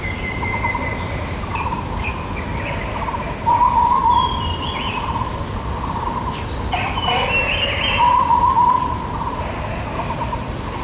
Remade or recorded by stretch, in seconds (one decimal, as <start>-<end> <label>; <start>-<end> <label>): 0.0-10.8 recorded